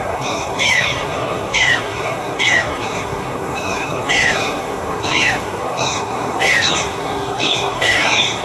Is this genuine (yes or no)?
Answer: no